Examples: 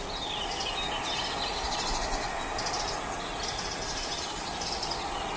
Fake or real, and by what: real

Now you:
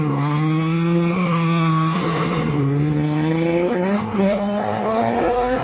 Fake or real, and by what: fake, codec, SNAC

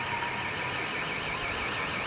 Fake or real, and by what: real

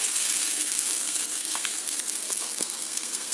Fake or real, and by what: fake, codec, SNAC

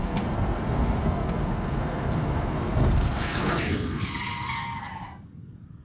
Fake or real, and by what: fake, codec, SNAC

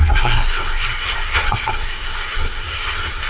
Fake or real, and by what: fake, codec, SNAC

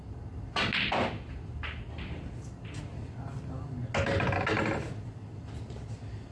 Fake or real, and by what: real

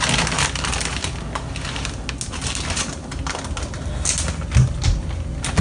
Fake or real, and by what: real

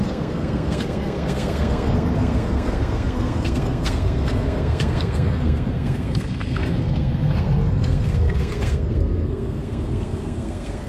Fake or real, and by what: fake, codec, SNAC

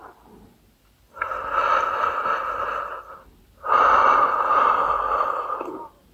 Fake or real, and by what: real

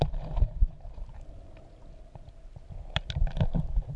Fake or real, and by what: real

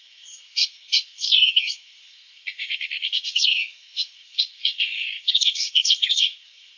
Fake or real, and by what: fake, codec, SNAC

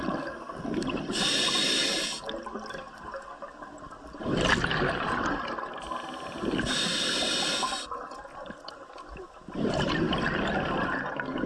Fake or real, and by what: real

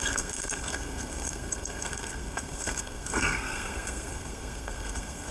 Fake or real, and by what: fake, codec, SNAC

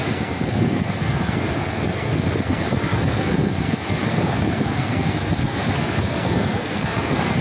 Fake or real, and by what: fake, codec, SNAC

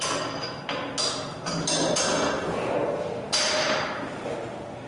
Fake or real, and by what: real